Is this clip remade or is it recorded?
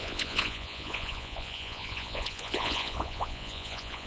remade